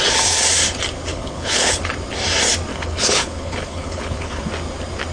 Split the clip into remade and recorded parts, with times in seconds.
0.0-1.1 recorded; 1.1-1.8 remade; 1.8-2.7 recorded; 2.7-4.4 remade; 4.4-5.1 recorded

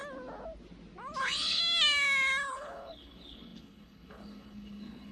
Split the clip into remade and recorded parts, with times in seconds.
0.0-1.2 recorded; 1.2-1.6 remade; 1.6-2.5 recorded; 2.5-5.1 remade

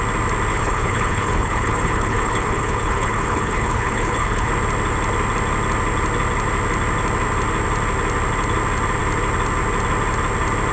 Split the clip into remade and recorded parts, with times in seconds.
0.0-0.5 recorded; 0.5-4.5 remade; 4.5-10.7 recorded

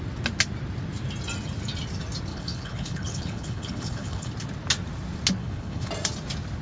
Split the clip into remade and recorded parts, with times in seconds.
0.0-2.3 recorded; 2.3-4.3 remade; 4.3-5.4 recorded; 5.4-5.9 remade; 5.9-6.6 recorded

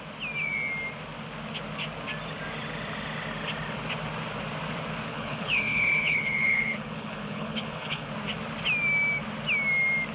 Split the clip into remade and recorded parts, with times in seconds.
0.0-5.1 recorded; 5.1-8.1 remade; 8.1-10.1 recorded

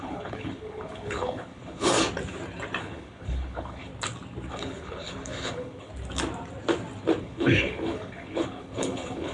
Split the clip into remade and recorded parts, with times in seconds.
0.0-1.9 remade; 1.9-2.8 recorded; 2.8-3.9 remade; 3.9-4.5 recorded; 4.5-5.9 remade; 5.9-7.2 recorded; 7.2-9.3 remade

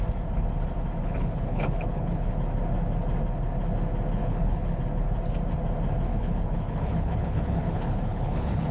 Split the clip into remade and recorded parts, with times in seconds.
0.0-1.0 recorded; 1.0-2.4 remade; 2.4-4.2 recorded; 4.2-4.8 remade; 4.8-6.1 recorded; 6.1-8.7 remade

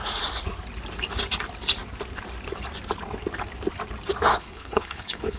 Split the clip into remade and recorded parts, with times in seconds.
0.0-4.3 recorded; 4.3-5.4 remade